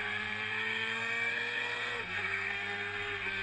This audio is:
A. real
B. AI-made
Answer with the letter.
B